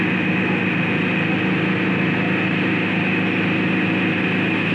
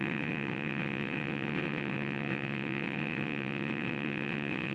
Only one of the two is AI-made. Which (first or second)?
second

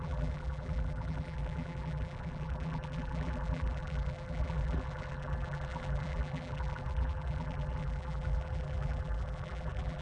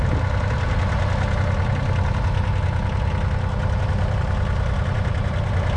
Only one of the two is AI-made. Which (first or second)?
first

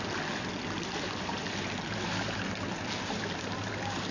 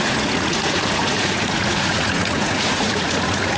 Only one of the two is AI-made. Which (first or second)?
second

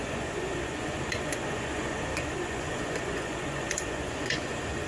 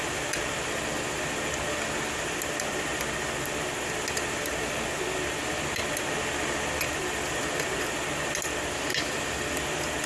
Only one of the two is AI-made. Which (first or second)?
first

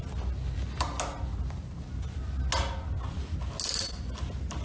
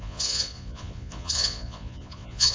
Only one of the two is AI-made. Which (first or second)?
second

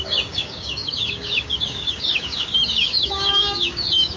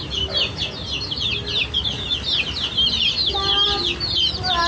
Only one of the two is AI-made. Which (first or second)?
first